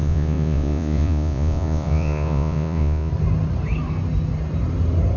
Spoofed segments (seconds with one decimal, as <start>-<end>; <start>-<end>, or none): 0.0-3.1